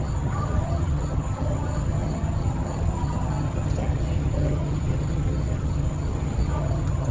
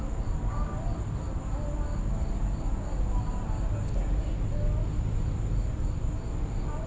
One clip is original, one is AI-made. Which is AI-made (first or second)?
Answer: first